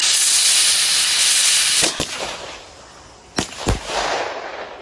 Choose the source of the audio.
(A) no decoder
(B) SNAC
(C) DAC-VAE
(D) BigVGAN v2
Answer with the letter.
A